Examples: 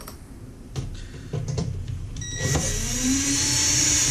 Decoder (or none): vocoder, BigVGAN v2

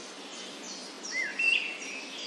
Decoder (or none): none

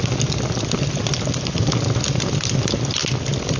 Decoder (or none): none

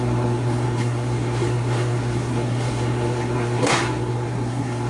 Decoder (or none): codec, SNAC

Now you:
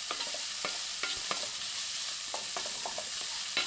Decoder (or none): none